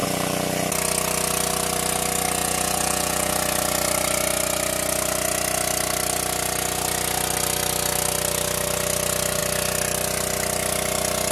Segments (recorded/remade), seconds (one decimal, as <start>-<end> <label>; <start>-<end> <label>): 0.0-2.4 recorded; 2.4-3.3 remade; 3.3-11.3 recorded